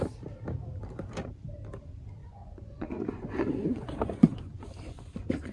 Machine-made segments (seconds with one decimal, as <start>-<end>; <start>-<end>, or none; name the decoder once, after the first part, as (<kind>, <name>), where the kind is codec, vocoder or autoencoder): 2.2-5.5 (vocoder, Vocos)